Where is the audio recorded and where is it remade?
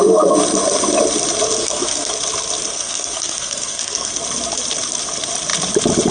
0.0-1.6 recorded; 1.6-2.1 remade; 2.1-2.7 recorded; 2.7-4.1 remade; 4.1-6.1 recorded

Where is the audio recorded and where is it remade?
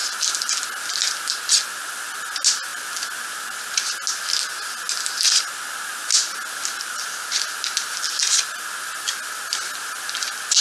0.0-10.6 recorded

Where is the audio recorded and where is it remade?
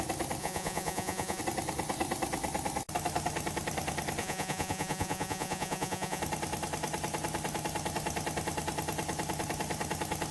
0.0-0.4 recorded; 0.4-1.4 remade; 1.4-4.2 recorded; 4.2-6.2 remade; 6.2-10.3 recorded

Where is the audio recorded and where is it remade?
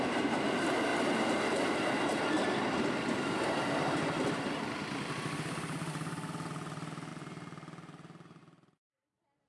0.0-9.5 recorded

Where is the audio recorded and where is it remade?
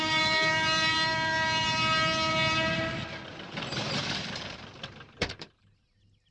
0.0-3.3 recorded; 3.3-5.7 remade; 5.7-6.3 recorded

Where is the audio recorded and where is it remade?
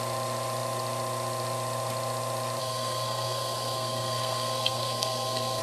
0.0-2.6 recorded; 2.6-5.6 remade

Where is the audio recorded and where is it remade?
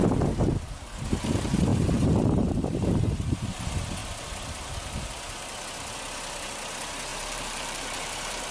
0.0-1.7 recorded; 1.7-3.6 remade; 3.6-7.1 recorded; 7.1-8.5 remade